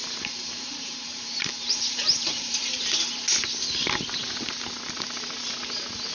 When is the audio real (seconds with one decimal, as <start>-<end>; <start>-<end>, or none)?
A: 2.9-6.1

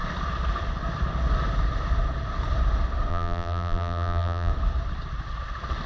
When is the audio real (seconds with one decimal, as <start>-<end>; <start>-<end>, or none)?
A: 0.0-3.1; 4.5-5.9

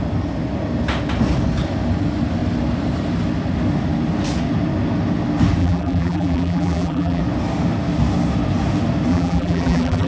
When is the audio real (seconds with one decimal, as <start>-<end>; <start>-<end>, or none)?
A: 0.0-5.6; 7.2-9.1

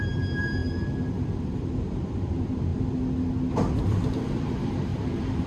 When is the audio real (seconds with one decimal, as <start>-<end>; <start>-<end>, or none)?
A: 0.6-1.1; 2.7-3.8